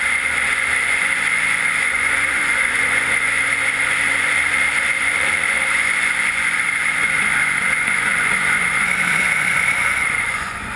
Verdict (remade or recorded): remade